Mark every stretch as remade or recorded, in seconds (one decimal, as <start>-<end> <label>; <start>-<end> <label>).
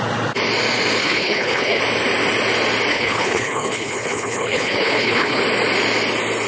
0.0-1.0 recorded; 1.0-1.8 remade; 1.8-2.9 recorded; 2.9-5.4 remade; 5.4-6.5 recorded